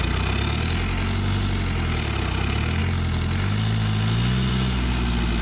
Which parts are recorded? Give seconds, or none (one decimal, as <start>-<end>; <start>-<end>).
0.0-5.4